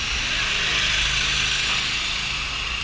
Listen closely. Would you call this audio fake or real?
real